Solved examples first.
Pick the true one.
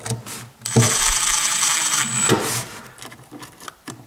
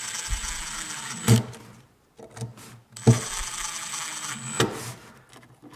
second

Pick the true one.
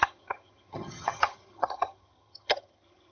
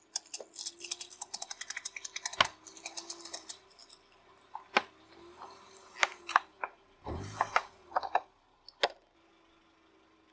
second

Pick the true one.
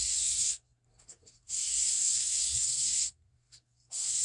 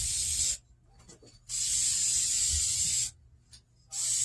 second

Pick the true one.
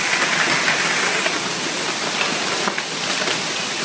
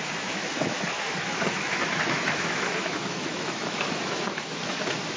first